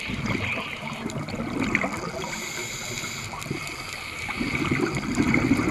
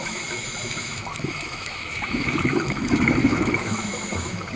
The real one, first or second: first